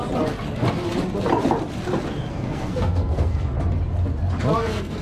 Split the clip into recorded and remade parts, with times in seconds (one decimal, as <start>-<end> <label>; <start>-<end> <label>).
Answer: 0.0-2.3 recorded; 2.3-3.5 remade; 3.5-4.6 recorded; 4.6-5.0 remade